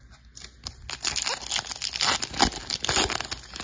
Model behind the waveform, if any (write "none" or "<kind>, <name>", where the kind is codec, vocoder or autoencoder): none